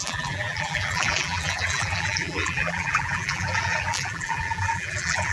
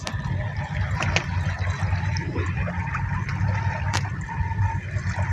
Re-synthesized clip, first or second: first